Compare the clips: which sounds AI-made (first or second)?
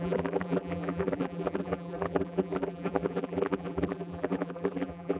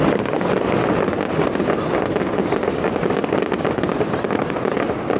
first